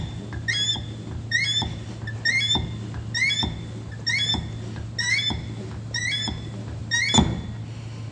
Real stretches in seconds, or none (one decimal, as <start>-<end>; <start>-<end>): 0.0-8.1